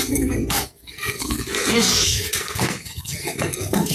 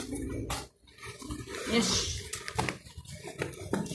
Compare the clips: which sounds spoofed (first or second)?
first